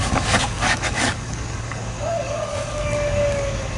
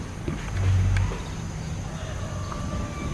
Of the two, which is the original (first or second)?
second